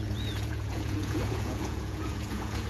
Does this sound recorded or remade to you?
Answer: remade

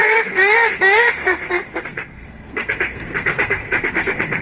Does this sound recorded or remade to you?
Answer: remade